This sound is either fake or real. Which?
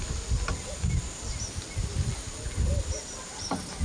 real